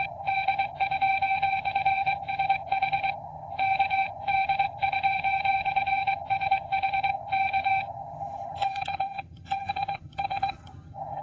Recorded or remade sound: remade